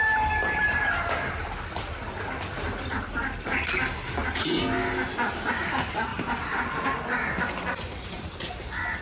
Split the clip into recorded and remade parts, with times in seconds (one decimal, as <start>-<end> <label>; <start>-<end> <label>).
0.0-9.0 recorded